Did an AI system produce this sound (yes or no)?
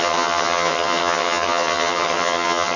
yes